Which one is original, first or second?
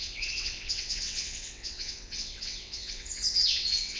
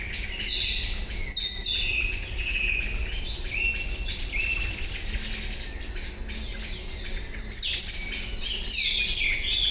second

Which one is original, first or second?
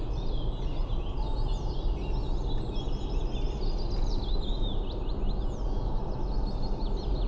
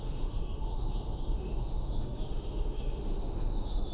first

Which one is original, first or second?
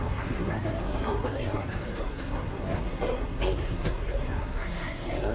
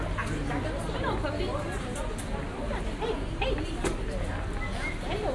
second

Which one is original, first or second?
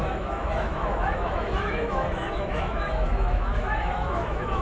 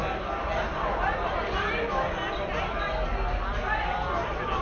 second